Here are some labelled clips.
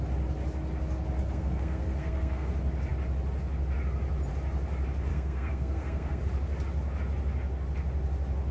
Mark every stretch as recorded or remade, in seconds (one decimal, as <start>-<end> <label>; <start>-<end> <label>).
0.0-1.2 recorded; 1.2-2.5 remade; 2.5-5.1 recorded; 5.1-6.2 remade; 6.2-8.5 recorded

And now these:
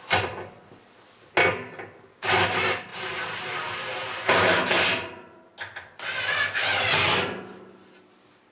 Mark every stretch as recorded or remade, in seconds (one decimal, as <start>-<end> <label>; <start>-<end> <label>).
0.0-8.5 recorded

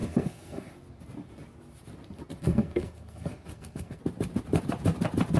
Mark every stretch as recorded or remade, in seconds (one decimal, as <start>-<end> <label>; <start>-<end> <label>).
0.0-0.7 remade; 0.7-2.4 recorded; 2.4-4.0 remade; 4.0-5.4 recorded

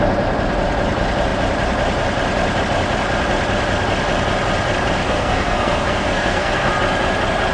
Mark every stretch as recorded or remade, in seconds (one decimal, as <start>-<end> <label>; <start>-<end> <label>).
0.0-5.0 recorded; 5.0-6.7 remade; 6.7-7.5 recorded

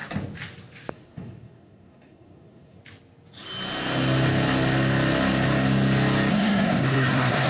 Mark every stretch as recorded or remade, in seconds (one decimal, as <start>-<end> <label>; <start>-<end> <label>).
0.0-0.9 recorded; 0.9-2.8 remade; 2.8-6.3 recorded; 6.3-7.5 remade

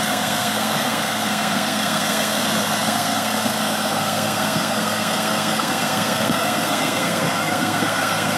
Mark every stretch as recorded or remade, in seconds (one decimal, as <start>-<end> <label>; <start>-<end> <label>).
0.0-8.4 remade

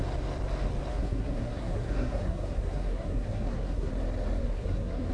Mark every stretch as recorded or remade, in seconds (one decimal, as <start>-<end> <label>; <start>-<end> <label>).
0.0-0.9 recorded; 0.9-3.9 remade; 3.9-4.4 recorded; 4.4-5.1 remade